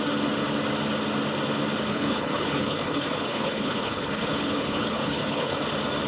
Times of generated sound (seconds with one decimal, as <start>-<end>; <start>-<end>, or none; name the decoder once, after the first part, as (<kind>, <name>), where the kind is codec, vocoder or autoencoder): 1.9-5.6 (codec, HILCodec)